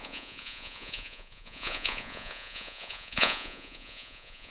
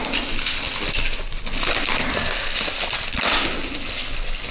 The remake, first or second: first